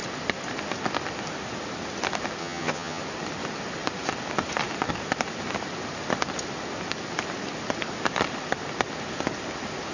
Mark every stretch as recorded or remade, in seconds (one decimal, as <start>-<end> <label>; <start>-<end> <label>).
0.0-2.4 recorded; 2.4-3.0 remade; 3.0-9.9 recorded